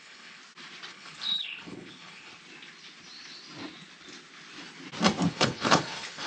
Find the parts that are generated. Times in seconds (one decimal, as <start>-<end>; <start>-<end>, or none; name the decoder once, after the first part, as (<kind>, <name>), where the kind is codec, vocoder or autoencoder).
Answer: 0.0-0.4 (codec, HILCodec); 0.9-2.3; 5.3-6.3